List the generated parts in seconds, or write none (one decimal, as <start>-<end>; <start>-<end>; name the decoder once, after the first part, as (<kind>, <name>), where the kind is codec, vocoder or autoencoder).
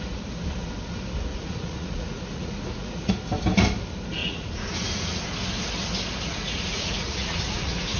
1.3-3.1 (vocoder, Vocos); 4.2-5.2; 6.2-8.0